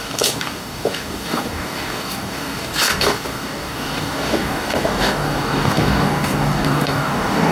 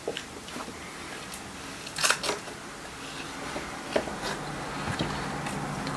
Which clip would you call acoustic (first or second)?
second